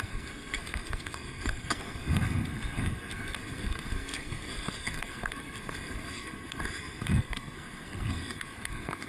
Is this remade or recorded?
remade